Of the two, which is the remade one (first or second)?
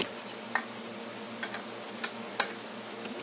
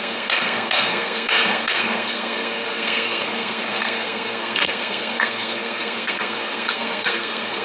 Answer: second